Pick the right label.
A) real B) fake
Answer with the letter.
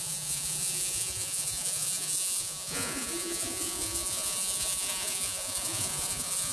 B